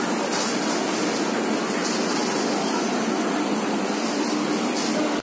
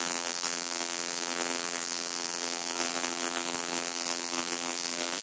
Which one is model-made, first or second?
second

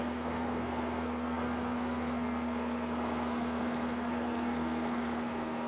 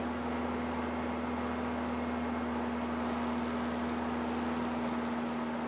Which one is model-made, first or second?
first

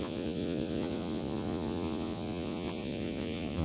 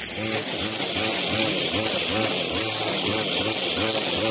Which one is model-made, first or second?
first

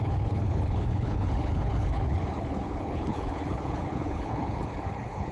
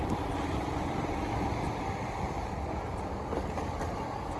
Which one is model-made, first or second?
first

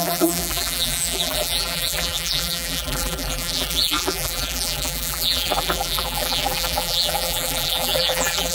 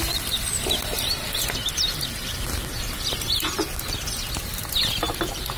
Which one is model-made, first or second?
first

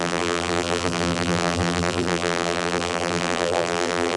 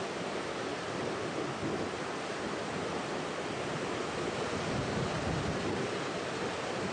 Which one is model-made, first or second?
first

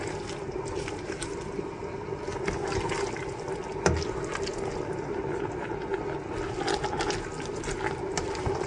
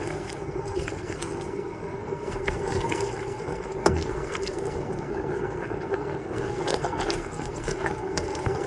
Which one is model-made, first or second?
second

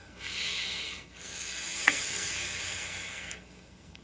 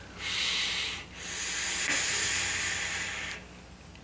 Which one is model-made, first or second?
first